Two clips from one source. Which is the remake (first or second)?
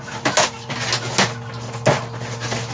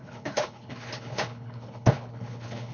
second